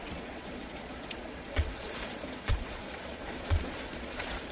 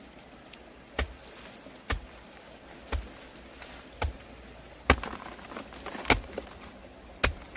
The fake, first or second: first